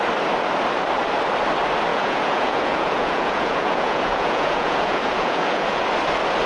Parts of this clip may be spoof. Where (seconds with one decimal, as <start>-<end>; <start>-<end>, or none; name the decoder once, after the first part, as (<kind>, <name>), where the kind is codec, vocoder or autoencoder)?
1.9-5.8 (vocoder, Vocos)